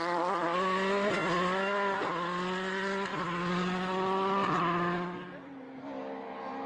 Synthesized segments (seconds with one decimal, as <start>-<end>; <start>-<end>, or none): none